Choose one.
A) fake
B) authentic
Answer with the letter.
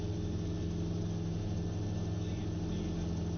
B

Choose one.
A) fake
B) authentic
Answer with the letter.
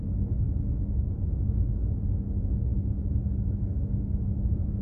A